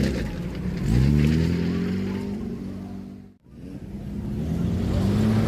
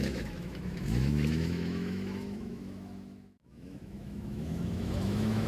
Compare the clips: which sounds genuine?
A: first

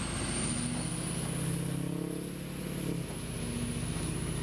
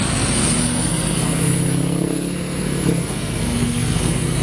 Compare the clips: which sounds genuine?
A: first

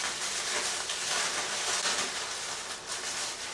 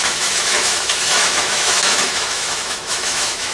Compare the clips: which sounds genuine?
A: first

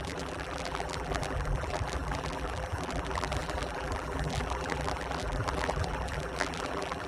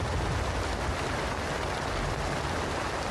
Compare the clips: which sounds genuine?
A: second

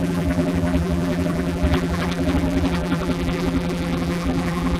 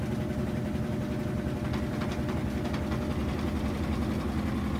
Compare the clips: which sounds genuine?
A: second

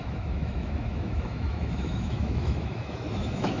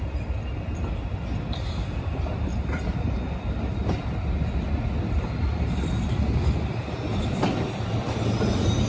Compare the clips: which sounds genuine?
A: second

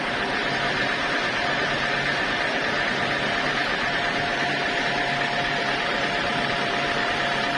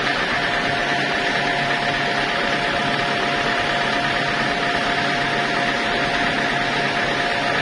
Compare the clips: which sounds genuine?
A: second